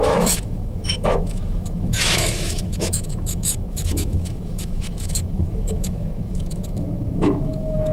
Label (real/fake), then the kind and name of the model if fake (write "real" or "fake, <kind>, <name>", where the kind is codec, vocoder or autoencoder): fake, autoencoder, DAC-VAE